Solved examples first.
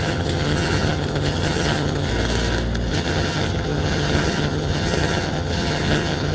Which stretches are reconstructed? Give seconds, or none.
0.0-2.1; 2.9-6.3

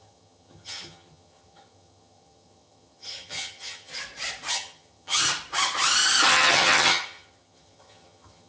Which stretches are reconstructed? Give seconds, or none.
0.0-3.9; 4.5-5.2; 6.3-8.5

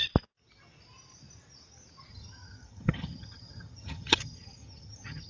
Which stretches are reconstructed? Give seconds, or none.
2.1-5.3

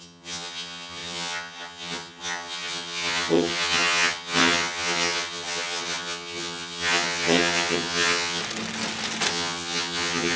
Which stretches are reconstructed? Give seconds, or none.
0.0-8.4; 9.3-10.4

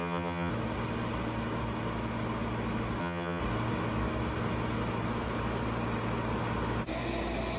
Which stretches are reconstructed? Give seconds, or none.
0.0-0.5; 3.0-3.4

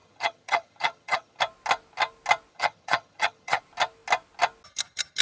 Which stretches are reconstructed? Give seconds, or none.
0.0-1.4; 2.5-3.6

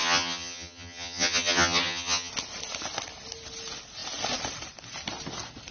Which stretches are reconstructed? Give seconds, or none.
0.0-2.3

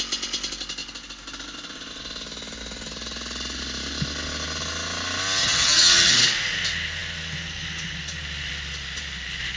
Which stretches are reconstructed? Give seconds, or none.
5.4-6.1